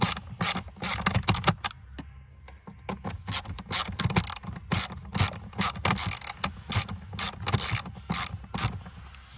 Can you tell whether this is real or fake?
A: real